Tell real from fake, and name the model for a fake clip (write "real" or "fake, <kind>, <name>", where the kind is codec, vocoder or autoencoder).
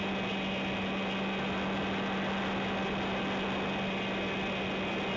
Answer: real